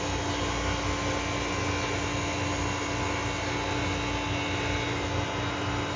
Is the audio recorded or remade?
recorded